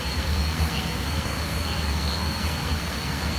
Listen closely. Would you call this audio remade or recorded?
remade